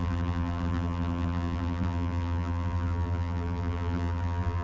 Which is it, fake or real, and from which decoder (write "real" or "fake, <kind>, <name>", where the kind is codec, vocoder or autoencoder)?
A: fake, vocoder, BigVGAN v2